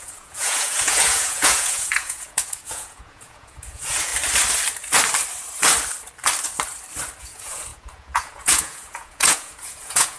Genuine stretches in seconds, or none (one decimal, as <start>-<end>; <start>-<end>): 4.1-7.2